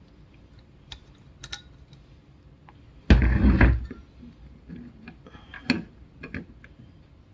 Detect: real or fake real